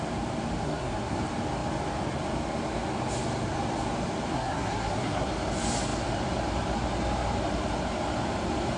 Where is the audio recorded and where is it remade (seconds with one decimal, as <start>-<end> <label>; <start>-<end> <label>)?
0.0-0.6 recorded; 0.6-1.2 remade; 1.2-4.3 recorded; 4.3-5.3 remade; 5.3-8.8 recorded